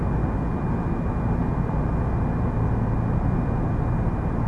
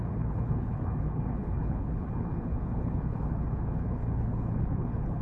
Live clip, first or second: first